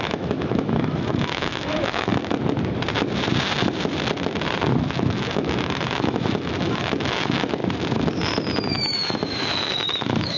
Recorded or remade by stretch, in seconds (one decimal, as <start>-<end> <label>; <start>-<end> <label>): 0.0-2.1 remade; 2.1-4.9 recorded; 4.9-7.6 remade; 7.6-8.6 recorded; 8.6-10.4 remade